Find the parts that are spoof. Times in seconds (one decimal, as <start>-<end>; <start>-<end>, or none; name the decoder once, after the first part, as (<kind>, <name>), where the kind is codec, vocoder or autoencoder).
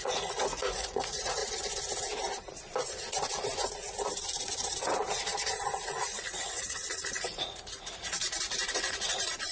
0.0-1.4 (vocoder, Vocos); 5.8-8.2; 8.7-9.5